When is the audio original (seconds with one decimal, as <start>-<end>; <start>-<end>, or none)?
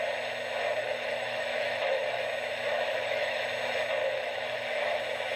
0.0-0.8; 2.2-2.7; 3.5-4.0; 5.0-5.4